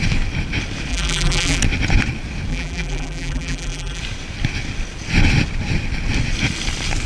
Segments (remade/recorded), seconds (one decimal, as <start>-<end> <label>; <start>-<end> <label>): 0.0-0.9 recorded; 0.9-1.6 remade; 1.6-2.5 recorded; 2.5-4.0 remade; 4.0-7.1 recorded